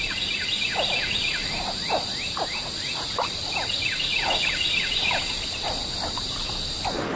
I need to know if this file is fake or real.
real